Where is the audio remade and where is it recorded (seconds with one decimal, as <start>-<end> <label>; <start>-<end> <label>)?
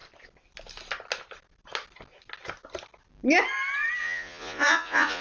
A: 0.0-4.0 recorded; 4.0-5.2 remade